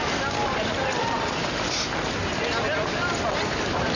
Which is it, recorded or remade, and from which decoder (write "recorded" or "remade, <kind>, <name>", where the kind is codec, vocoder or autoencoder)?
recorded